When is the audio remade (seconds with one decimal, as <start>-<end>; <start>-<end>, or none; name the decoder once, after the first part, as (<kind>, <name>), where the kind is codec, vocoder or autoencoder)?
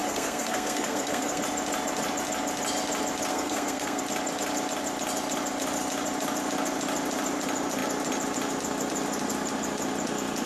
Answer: 0.0-1.4 (codec, SNAC); 3.3-4.0